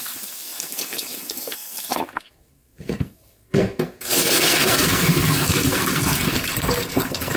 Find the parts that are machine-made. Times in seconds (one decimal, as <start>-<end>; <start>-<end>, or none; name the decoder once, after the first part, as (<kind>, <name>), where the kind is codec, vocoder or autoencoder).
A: 0.0-7.4 (codec, SNAC)